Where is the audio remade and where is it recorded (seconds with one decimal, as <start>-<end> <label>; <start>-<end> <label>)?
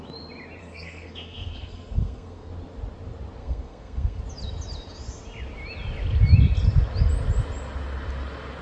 0.0-0.6 recorded; 0.6-2.5 remade; 2.5-3.4 recorded; 3.4-4.2 remade; 4.2-8.6 recorded